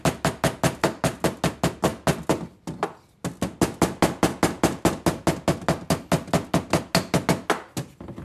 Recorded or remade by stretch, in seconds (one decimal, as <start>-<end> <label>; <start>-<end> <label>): 0.0-8.2 recorded